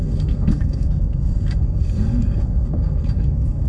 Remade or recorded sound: remade